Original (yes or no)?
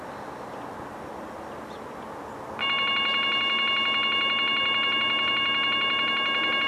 yes